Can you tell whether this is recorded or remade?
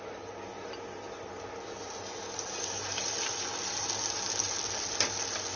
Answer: recorded